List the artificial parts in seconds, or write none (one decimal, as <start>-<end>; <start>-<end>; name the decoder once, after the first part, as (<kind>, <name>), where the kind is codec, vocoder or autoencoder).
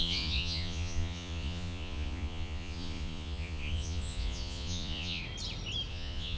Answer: 0.0-5.2 (vocoder, Vocos); 5.9-6.4